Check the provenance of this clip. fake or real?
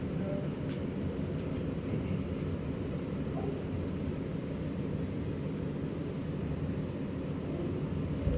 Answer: fake